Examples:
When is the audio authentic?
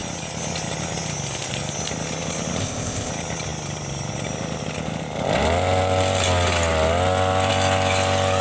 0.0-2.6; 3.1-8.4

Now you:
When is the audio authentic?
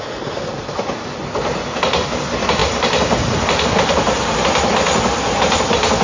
0.0-6.0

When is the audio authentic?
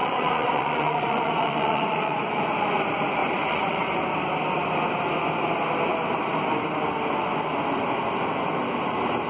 2.4-3.2; 3.8-9.3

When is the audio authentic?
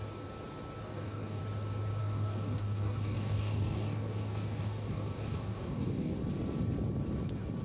0.0-0.8; 1.4-2.0; 6.2-7.6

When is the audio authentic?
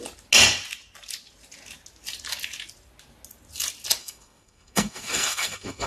0.0-4.0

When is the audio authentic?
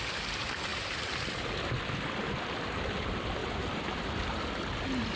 0.0-3.4; 4.4-5.2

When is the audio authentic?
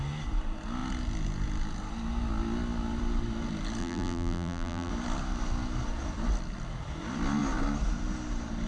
0.0-3.8; 4.9-8.7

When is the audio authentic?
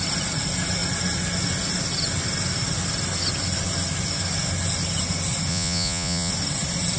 0.0-5.5; 6.3-7.0